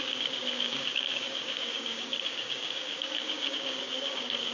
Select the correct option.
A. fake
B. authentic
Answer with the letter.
A